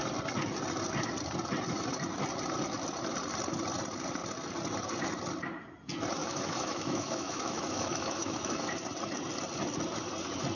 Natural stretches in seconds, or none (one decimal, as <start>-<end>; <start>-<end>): 0.0-6.2; 8.6-10.6